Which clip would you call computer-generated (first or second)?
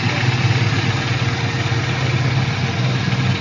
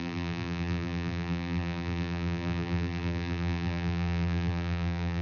second